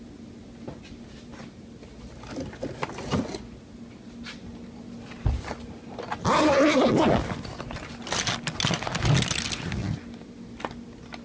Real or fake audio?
real